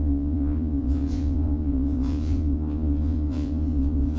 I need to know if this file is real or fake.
fake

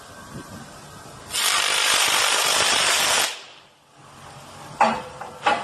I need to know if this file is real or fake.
real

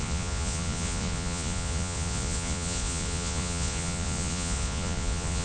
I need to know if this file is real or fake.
fake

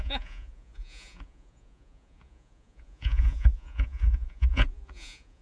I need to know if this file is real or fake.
fake